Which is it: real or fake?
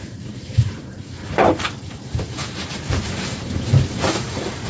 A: fake